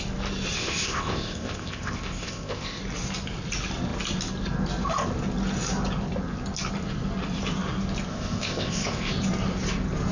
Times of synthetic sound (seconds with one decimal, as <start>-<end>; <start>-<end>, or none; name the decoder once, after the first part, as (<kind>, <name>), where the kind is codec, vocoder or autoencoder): 0.6-2.8 (codec, ZipCodec); 8.1-9.1